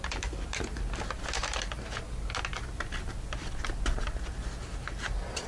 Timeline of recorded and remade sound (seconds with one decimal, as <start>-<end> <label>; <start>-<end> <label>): 0.0-5.5 recorded